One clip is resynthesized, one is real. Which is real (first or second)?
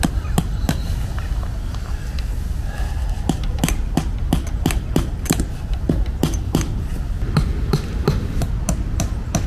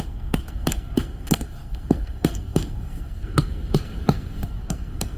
first